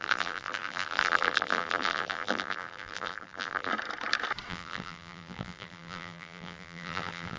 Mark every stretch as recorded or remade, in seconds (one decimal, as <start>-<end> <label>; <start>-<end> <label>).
0.0-3.7 remade; 3.7-4.5 recorded; 4.5-7.4 remade